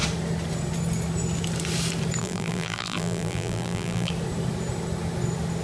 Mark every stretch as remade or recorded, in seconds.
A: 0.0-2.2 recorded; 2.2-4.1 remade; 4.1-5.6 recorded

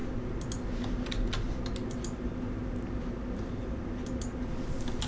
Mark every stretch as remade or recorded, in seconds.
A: 0.0-5.1 recorded

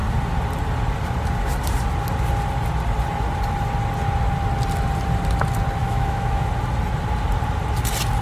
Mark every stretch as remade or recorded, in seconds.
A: 0.0-5.8 recorded; 5.8-6.5 remade; 6.5-8.2 recorded

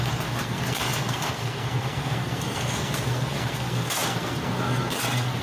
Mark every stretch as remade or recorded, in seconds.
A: 0.0-5.4 remade

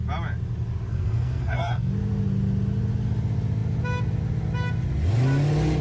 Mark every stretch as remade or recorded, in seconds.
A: 0.0-0.9 recorded; 0.9-1.9 remade; 1.9-5.8 recorded

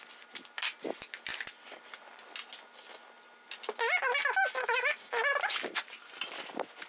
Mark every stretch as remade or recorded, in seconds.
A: 0.0-4.6 recorded; 4.6-5.1 remade; 5.1-6.9 recorded

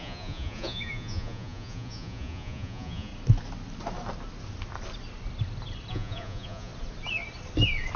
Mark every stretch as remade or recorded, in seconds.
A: 0.0-3.1 remade; 3.1-5.9 recorded; 5.9-6.7 remade; 6.7-8.0 recorded